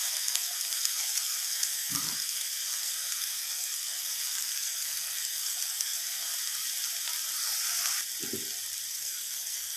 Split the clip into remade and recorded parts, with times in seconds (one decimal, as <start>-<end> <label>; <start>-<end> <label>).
0.0-6.3 remade; 6.3-8.9 recorded; 8.9-9.8 remade

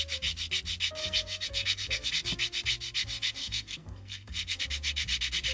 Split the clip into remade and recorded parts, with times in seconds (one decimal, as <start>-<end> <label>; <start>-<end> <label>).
0.0-1.0 recorded; 1.0-2.1 remade; 2.1-3.4 recorded; 3.4-4.6 remade; 4.6-5.5 recorded

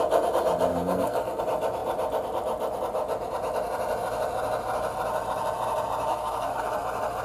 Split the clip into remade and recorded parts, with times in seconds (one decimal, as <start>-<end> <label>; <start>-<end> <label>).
0.0-0.7 recorded; 0.7-1.4 remade; 1.4-6.1 recorded; 6.1-6.7 remade; 6.7-7.2 recorded

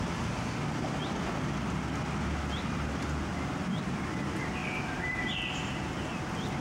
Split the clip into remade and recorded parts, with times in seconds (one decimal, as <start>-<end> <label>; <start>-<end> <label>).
0.0-6.6 recorded

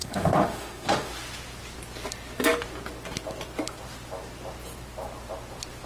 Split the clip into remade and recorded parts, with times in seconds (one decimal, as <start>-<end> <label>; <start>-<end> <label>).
0.0-1.1 remade; 1.1-5.9 recorded